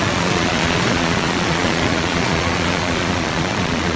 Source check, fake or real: fake